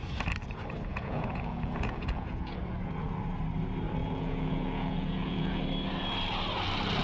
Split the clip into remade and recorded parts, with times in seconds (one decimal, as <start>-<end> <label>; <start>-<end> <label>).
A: 0.0-0.9 recorded; 0.9-2.6 remade; 2.6-4.0 recorded; 4.0-5.6 remade; 5.6-7.0 recorded